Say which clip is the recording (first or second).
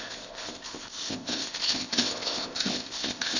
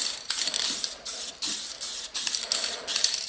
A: second